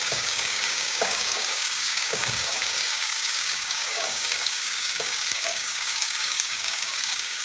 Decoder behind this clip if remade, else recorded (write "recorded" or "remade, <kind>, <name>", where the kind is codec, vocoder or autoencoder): remade, codec, DAC